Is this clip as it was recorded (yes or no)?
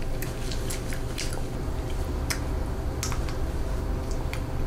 yes